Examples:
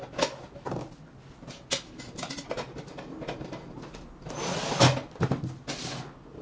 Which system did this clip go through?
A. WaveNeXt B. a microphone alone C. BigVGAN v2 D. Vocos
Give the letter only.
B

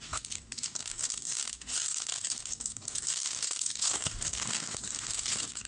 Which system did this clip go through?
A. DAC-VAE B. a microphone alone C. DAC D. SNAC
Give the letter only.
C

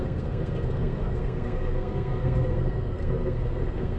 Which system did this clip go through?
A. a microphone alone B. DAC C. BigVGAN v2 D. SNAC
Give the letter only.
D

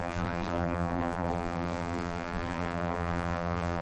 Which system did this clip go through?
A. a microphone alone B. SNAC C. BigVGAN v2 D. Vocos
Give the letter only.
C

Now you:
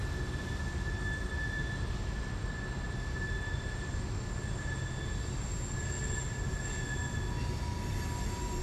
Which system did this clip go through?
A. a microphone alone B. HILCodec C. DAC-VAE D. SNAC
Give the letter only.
A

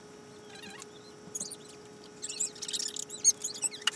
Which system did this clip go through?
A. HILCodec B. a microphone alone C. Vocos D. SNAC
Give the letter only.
B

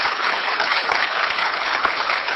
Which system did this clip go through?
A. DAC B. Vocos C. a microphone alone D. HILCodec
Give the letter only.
D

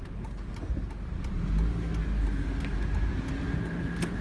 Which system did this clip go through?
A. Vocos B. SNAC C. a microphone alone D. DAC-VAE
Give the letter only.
C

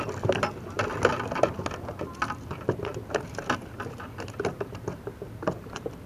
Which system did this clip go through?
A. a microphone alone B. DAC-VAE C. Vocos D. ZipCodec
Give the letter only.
A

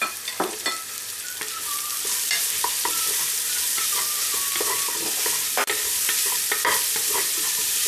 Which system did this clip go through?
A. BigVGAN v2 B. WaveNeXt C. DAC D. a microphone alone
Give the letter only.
A